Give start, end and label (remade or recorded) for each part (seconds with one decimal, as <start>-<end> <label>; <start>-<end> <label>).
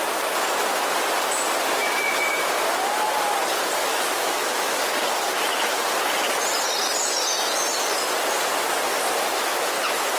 0.0-3.8 recorded; 3.8-4.8 remade; 4.8-10.2 recorded